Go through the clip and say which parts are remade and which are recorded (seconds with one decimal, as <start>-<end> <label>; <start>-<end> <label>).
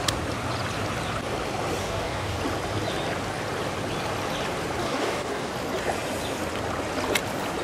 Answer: 0.0-1.8 recorded; 1.8-2.4 remade; 2.4-4.8 recorded; 4.8-5.5 remade; 5.5-7.6 recorded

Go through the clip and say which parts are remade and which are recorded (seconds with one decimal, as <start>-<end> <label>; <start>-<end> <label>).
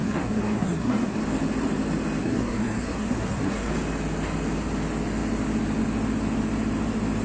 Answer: 0.0-1.2 remade; 1.2-2.2 recorded; 2.2-3.7 remade; 3.7-7.2 recorded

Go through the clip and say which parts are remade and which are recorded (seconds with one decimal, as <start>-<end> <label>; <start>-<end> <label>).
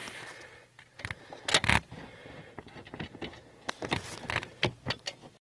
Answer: 0.0-5.4 recorded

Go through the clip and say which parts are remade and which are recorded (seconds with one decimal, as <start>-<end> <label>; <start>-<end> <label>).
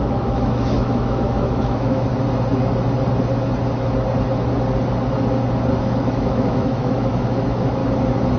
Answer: 0.0-2.1 remade; 2.1-5.8 recorded; 5.8-7.8 remade; 7.8-8.4 recorded